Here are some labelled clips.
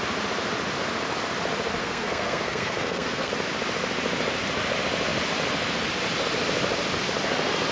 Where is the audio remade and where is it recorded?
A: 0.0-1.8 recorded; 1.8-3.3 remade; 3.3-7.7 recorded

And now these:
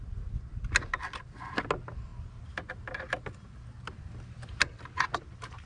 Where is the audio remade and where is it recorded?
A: 0.0-5.7 recorded

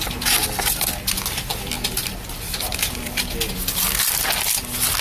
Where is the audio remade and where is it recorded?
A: 0.0-5.0 recorded

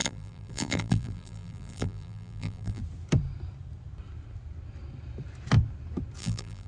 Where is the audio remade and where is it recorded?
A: 0.0-2.8 remade; 2.8-6.2 recorded; 6.2-6.7 remade

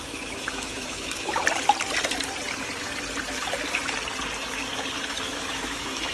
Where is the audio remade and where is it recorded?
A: 0.0-1.4 remade; 1.4-5.1 recorded; 5.1-6.1 remade

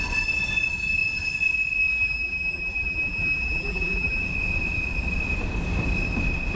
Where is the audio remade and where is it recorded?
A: 0.0-1.9 recorded; 1.9-4.2 remade; 4.2-6.6 recorded